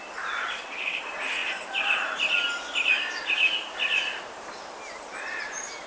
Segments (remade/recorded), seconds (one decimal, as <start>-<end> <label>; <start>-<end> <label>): 0.0-5.9 recorded